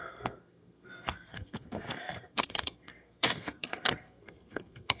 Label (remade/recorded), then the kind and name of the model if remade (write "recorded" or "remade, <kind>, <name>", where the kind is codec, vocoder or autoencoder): remade, codec, SNAC